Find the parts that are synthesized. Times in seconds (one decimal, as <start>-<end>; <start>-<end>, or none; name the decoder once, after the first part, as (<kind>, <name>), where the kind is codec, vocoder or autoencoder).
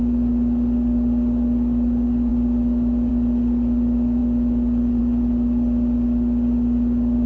none